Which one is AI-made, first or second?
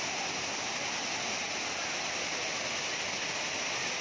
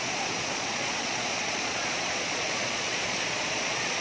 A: second